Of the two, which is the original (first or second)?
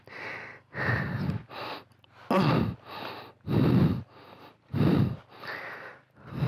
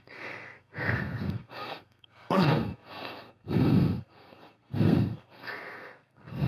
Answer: first